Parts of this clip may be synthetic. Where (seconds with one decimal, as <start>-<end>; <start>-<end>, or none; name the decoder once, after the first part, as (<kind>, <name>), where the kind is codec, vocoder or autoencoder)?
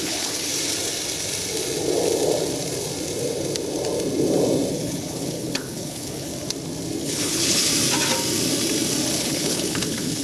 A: 0.0-0.5 (codec, HILCodec); 4.7-6.3; 7.0-7.7; 9.2-10.2